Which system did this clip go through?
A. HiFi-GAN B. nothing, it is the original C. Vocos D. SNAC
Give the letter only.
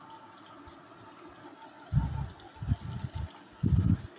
B